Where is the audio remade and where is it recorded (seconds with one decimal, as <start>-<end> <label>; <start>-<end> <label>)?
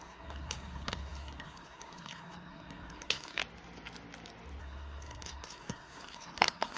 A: 0.0-3.4 remade; 3.4-4.6 recorded; 4.6-6.8 remade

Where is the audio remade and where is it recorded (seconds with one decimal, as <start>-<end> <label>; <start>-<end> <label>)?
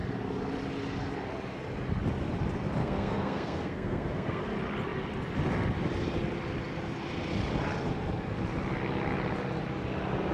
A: 0.0-2.8 recorded; 2.8-4.4 remade; 4.4-10.3 recorded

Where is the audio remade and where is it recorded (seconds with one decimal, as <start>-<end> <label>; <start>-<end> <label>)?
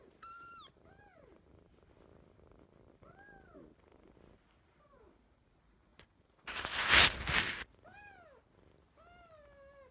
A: 0.0-9.9 recorded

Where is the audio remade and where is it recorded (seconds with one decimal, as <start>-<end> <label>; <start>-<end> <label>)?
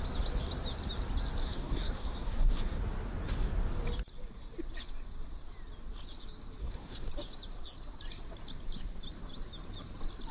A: 0.0-1.4 recorded; 1.4-2.8 remade; 2.8-6.6 recorded; 6.6-7.1 remade; 7.1-10.3 recorded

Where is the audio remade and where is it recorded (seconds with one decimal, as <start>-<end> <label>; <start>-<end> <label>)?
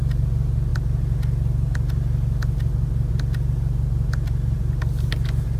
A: 0.0-5.6 recorded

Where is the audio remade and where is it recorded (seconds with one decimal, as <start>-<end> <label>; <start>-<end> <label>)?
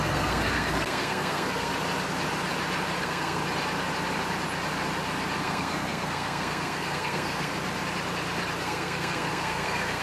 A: 0.0-1.7 remade; 1.7-3.0 recorded; 3.0-3.4 remade; 3.4-5.4 recorded; 5.4-7.5 remade; 7.5-8.6 recorded; 8.6-10.0 remade